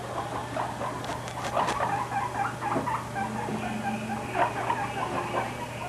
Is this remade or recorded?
recorded